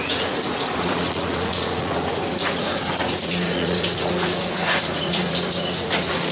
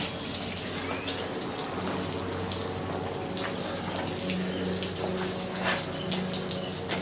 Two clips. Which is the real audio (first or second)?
second